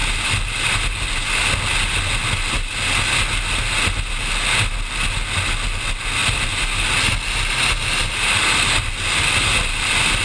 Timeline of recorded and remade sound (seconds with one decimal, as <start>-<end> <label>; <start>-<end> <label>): 0.0-10.2 recorded